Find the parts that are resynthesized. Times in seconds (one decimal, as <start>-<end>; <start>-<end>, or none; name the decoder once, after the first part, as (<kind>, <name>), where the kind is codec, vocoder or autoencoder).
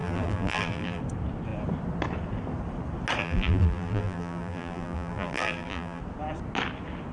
0.0-1.0 (vocoder, BigVGAN v2); 3.2-6.0